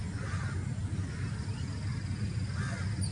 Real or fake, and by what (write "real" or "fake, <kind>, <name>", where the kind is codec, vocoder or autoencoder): real